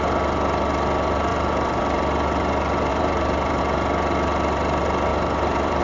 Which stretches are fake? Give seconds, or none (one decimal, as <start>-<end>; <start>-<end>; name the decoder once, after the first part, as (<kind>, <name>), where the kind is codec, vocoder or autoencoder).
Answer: 1.3-2.0 (vocoder, BigVGAN v2); 2.9-3.6; 5.1-5.8